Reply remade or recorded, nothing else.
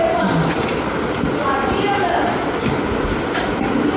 recorded